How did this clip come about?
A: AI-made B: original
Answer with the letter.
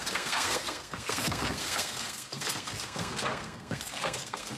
A